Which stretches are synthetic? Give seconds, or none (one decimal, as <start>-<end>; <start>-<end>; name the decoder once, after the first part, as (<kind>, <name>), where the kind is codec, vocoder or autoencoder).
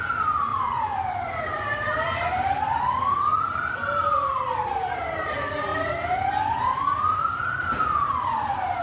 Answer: 0.5-3.4 (vocoder, BigVGAN v2); 5.7-6.6; 7.2-8.1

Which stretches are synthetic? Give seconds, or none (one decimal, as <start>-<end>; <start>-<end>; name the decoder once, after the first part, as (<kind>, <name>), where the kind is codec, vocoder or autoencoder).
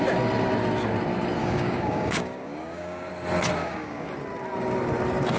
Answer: 1.4-3.1 (codec, DAC); 3.6-4.1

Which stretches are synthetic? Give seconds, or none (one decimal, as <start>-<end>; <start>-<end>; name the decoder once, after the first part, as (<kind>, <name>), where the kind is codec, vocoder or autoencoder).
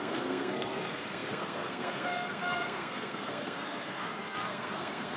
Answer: 0.0-5.2 (codec, SNAC)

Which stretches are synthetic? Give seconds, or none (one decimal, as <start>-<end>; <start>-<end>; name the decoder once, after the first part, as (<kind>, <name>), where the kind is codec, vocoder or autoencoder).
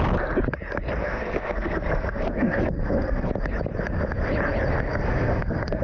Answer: 1.0-3.3 (codec, SNAC); 4.9-5.8